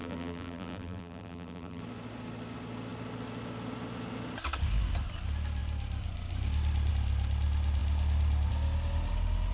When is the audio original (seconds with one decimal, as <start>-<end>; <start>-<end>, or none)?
1.8-9.5